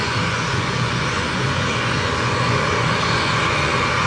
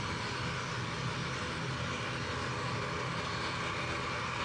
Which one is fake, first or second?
first